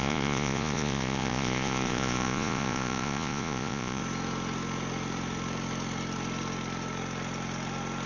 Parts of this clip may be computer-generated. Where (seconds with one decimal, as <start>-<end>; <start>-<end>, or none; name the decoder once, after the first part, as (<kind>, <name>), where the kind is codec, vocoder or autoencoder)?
0.0-4.0 (vocoder, Vocos)